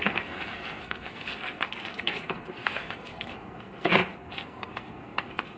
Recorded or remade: remade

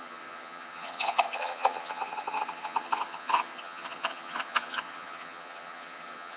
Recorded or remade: remade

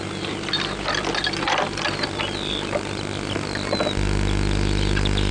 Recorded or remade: recorded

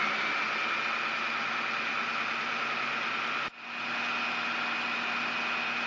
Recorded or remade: recorded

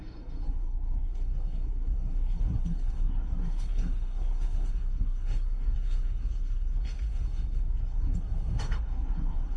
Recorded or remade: remade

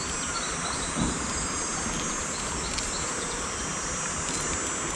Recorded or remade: recorded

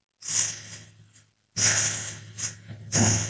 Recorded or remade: recorded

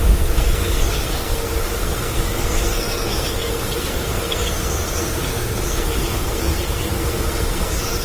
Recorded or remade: remade